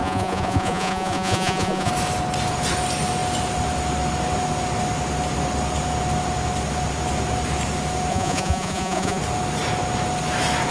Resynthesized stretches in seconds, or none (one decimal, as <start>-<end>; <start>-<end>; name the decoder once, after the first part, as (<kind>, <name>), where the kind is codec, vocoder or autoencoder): 0.0-1.9 (vocoder, Vocos); 8.1-9.2